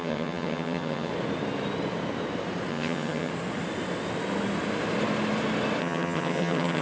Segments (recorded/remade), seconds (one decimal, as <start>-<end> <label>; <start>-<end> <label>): 0.0-1.1 remade; 1.1-2.7 recorded; 2.7-3.3 remade; 3.3-5.8 recorded; 5.8-6.8 remade